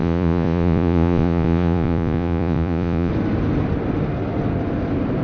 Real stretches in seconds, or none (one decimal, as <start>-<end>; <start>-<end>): 3.1-5.2